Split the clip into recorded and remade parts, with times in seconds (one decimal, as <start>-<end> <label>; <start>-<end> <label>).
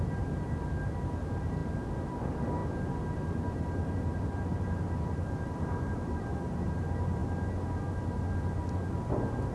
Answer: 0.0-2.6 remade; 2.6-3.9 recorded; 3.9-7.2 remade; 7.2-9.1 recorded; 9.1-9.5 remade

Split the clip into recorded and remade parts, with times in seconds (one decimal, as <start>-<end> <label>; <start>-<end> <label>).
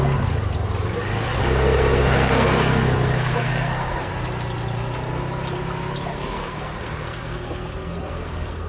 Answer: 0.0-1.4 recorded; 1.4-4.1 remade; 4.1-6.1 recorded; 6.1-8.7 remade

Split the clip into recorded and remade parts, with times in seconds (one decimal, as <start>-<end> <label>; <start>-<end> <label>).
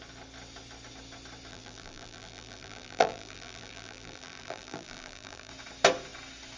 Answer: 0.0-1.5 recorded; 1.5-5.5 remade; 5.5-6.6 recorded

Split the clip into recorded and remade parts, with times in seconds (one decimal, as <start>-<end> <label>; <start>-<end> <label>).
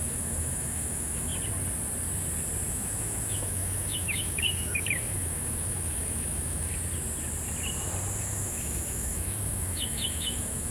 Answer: 0.0-1.3 remade; 1.3-2.7 recorded; 2.7-6.7 remade; 6.7-8.2 recorded; 8.2-10.7 remade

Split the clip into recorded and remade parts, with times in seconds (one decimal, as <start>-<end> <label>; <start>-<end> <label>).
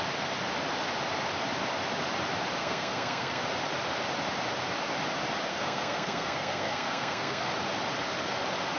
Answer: 0.0-2.6 recorded; 2.6-3.4 remade; 3.4-5.5 recorded; 5.5-7.5 remade; 7.5-8.8 recorded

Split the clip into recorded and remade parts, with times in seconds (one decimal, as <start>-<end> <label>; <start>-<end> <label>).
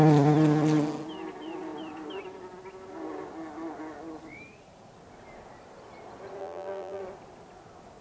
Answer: 0.0-6.4 recorded; 6.4-7.0 remade; 7.0-8.0 recorded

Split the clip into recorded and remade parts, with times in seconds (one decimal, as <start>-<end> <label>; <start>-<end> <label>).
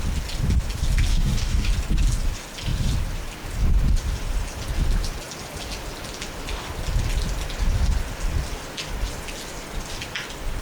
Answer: 0.0-1.1 recorded; 1.1-1.7 remade; 1.7-10.6 recorded